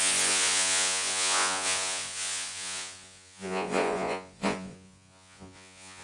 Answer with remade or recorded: remade